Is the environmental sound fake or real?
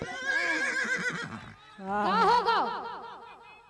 real